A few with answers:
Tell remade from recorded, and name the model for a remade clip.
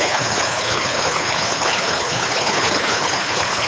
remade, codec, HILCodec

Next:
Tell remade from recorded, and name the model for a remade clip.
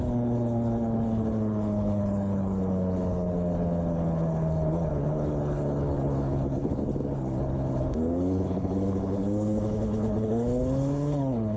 remade, codec, HILCodec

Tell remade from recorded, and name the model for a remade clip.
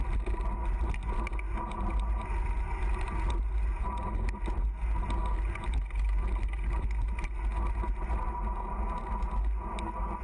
recorded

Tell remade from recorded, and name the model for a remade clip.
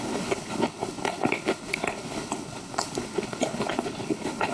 remade, codec, HILCodec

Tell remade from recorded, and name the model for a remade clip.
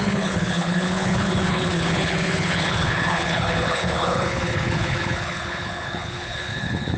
remade, codec, HILCodec